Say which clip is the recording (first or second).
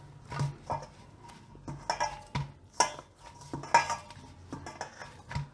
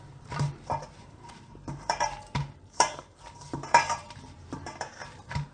first